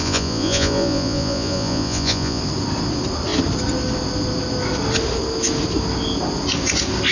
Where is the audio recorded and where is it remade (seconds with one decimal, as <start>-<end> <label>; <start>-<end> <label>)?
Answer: 0.0-2.4 remade; 2.4-7.1 recorded